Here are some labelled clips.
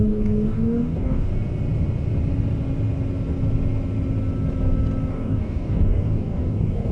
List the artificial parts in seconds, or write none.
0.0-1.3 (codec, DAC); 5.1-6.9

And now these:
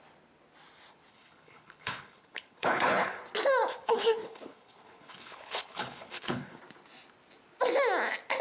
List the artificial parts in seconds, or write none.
1.1-3.2 (codec, HILCodec); 3.7-6.6